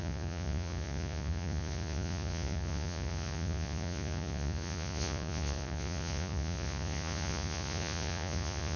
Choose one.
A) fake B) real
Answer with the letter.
A